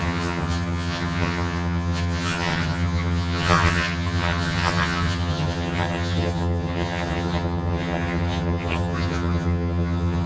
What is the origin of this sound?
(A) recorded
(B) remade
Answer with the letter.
B